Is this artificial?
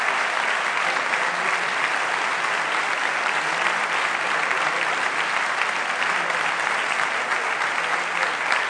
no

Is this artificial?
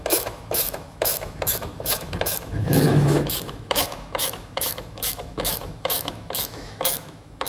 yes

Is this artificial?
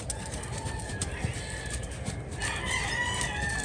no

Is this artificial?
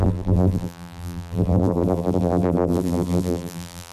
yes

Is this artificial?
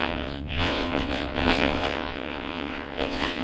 yes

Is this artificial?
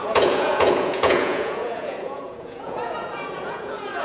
yes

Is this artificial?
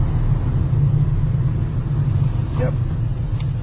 no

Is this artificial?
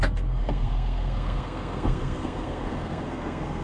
yes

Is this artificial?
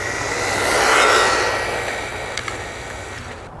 no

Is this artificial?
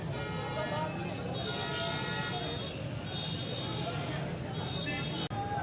no